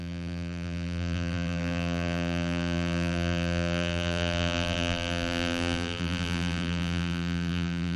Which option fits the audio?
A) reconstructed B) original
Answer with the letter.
A